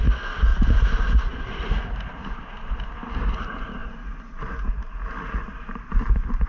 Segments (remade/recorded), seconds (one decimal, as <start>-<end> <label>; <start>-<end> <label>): 0.0-3.8 remade; 3.8-6.1 recorded; 6.1-6.5 remade